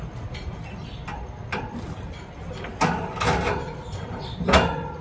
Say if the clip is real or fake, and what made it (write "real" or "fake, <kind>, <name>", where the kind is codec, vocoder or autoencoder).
real